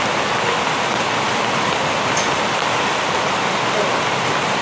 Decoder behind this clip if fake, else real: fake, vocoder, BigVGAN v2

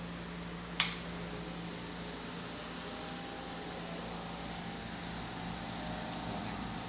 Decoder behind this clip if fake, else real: real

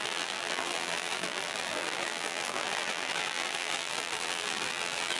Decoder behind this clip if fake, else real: fake, vocoder, BigVGAN v2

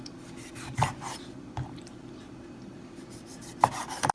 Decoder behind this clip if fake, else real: fake, vocoder, BigVGAN v2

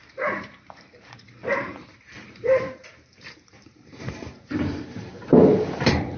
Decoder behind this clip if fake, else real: fake, vocoder, BigVGAN v2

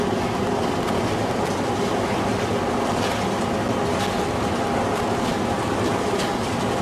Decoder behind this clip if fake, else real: real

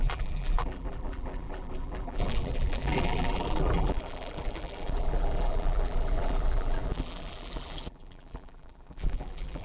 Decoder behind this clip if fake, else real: fake, vocoder, BigVGAN v2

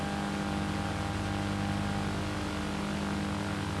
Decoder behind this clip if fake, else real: real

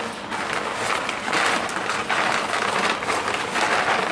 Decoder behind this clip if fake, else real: real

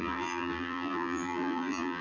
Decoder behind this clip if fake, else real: fake, vocoder, BigVGAN v2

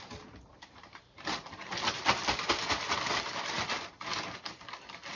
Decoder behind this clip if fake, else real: fake, vocoder, BigVGAN v2